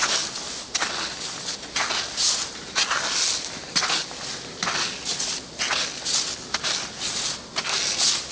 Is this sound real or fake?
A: real